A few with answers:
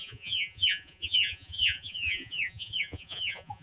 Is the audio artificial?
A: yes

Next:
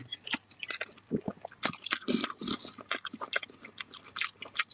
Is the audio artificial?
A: no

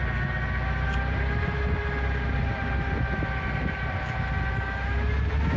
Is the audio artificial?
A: no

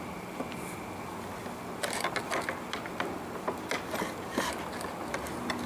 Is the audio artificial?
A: no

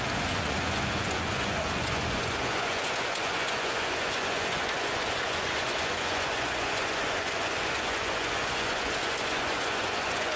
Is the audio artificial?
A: yes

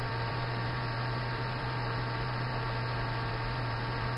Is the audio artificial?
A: yes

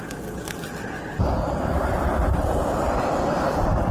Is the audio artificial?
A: no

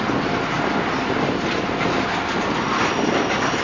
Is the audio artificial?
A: no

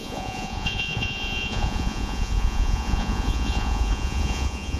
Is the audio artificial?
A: yes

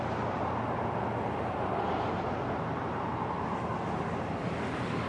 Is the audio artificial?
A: no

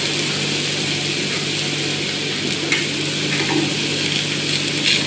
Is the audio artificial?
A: no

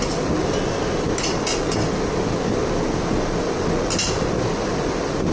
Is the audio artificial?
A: no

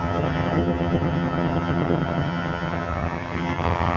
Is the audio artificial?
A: yes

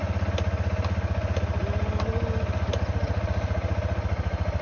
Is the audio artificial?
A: no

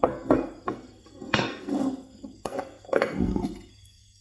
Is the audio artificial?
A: yes